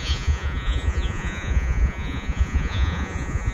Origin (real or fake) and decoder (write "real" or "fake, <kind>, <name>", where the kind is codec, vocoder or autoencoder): fake, vocoder, Vocos